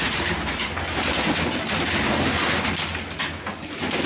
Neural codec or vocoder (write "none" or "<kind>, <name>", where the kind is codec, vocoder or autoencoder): none